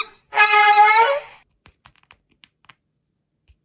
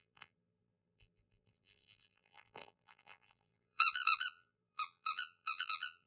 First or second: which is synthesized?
second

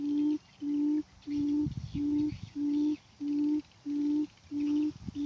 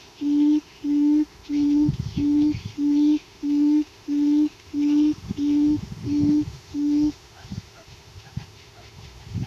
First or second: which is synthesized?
second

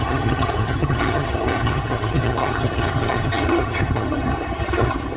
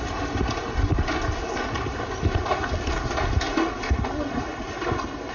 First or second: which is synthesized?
first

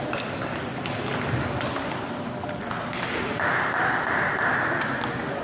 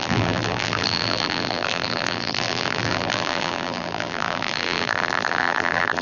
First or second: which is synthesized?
second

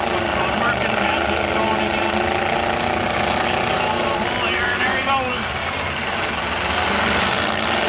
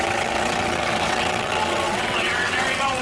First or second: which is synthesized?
second